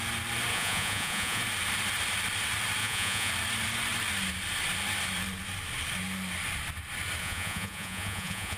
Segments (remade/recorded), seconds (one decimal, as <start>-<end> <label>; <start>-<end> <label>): 0.0-0.5 recorded; 0.5-1.4 remade; 1.4-2.8 recorded; 2.8-3.3 remade; 3.3-7.2 recorded; 7.2-8.6 remade